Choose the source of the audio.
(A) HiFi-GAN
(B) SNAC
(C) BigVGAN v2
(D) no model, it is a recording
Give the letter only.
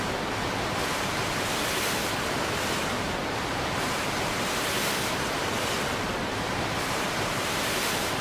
C